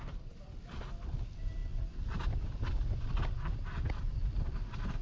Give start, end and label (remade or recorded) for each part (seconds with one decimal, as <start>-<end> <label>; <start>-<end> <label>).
0.0-5.0 recorded

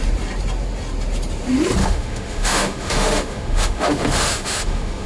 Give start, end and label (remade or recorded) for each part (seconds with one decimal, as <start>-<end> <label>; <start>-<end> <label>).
0.0-1.8 recorded; 1.8-5.1 remade

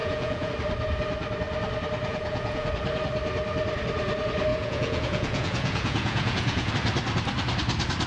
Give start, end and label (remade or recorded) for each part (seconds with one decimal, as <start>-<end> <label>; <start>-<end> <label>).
0.0-0.5 remade; 0.5-2.1 recorded; 2.1-2.7 remade; 2.7-4.5 recorded; 4.5-6.7 remade; 6.7-8.1 recorded

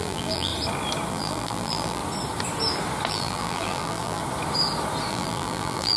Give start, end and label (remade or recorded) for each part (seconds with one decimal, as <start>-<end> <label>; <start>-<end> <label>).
0.0-0.5 remade; 0.5-1.1 recorded; 1.1-2.0 remade; 2.0-3.1 recorded; 3.1-4.2 remade; 4.2-5.1 recorded; 5.1-6.0 remade

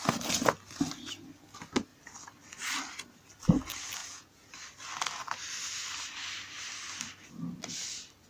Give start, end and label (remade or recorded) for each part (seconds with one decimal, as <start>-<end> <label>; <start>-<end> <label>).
0.0-4.0 recorded; 4.0-4.5 remade; 4.5-8.3 recorded

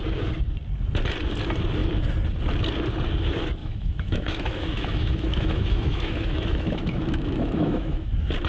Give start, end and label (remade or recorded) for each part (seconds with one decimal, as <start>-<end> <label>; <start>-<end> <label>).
0.0-3.6 recorded; 3.6-8.1 remade; 8.1-8.5 recorded

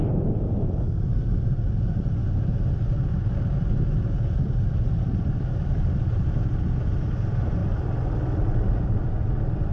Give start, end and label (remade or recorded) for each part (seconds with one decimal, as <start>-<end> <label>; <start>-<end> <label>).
0.0-4.0 recorded; 4.0-6.9 remade; 6.9-7.6 recorded; 7.6-8.2 remade; 8.2-9.7 recorded

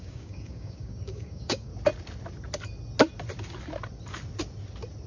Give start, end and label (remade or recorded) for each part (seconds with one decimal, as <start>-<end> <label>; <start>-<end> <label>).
0.0-1.7 remade; 1.7-5.1 recorded